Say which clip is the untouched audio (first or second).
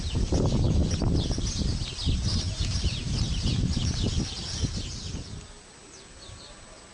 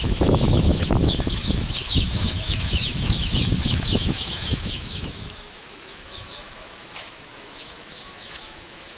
first